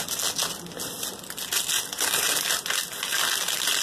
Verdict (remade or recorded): recorded